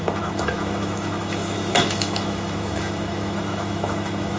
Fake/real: fake